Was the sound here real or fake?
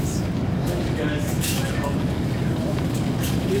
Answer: fake